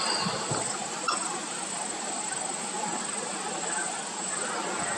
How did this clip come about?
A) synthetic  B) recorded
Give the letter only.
B